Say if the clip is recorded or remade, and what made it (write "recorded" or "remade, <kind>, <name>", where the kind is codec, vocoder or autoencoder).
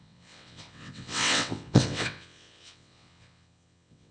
remade, vocoder, WaveNeXt